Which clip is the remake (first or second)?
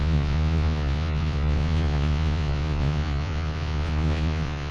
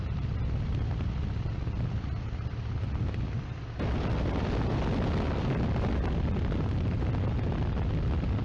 first